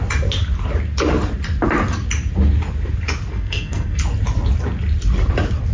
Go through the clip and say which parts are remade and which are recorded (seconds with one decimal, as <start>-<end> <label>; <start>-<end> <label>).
0.0-3.3 recorded; 3.3-4.0 remade; 4.0-5.7 recorded